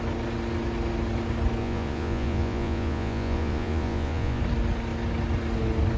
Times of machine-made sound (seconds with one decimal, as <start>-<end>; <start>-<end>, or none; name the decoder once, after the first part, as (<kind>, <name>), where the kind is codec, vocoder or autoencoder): 1.6-4.4 (vocoder, Vocos)